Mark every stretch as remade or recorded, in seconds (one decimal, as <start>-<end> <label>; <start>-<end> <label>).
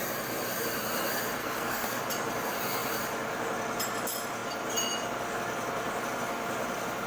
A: 0.0-1.4 recorded; 1.4-2.0 remade; 2.0-7.1 recorded